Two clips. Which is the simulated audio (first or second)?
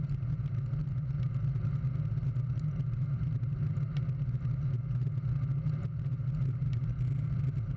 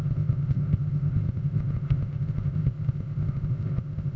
second